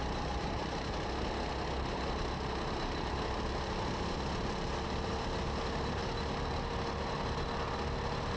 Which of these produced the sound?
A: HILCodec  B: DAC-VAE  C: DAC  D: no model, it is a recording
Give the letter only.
D